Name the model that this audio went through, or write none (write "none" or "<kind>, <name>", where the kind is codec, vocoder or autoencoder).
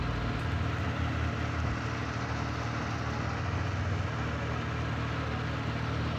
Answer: none